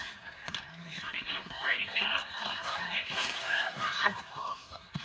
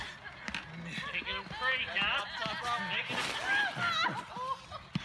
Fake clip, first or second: first